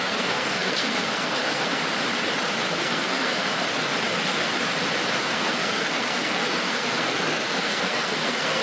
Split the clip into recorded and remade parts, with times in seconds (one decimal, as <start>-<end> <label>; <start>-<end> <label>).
0.0-1.8 remade; 1.8-2.7 recorded; 2.7-3.5 remade; 3.5-4.1 recorded; 4.1-4.5 remade; 4.5-5.2 recorded; 5.2-8.6 remade